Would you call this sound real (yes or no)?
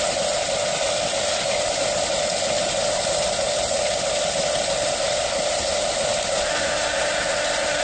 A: yes